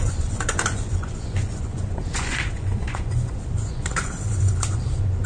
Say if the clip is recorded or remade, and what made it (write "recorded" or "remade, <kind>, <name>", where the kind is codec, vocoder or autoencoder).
remade, vocoder, Vocos